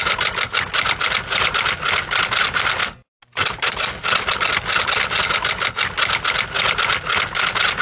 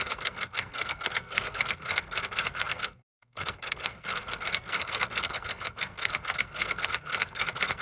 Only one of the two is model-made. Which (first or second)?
second